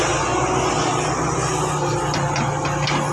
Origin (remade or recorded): recorded